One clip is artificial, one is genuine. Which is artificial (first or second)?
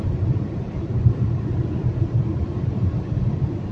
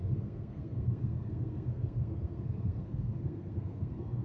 second